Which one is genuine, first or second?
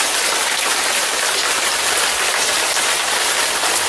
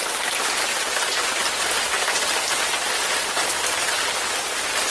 second